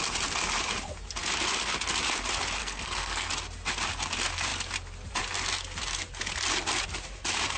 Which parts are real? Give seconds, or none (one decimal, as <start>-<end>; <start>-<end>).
0.0-2.6; 3.3-7.6